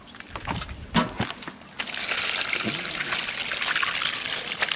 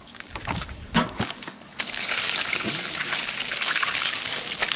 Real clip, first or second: first